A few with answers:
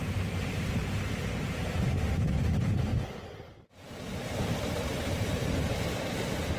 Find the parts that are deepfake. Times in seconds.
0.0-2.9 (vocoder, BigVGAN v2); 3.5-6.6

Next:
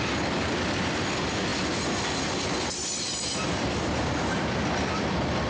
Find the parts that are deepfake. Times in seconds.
1.5-4.8 (vocoder, BigVGAN v2)

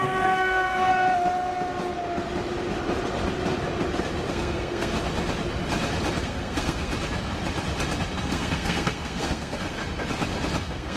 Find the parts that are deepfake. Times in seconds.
0.0-0.9 (codec, SNAC); 4.3-4.9; 6.2-6.9; 8.2-9.8; 10.6-11.0

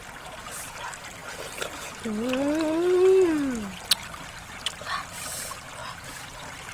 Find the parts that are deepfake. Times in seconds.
none